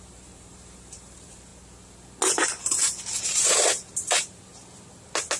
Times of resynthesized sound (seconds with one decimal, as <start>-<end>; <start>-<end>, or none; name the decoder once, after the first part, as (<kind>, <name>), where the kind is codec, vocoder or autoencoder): 0.0-1.5 (vocoder, BigVGAN v2); 3.2-4.5